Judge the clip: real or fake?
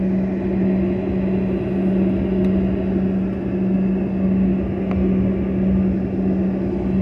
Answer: real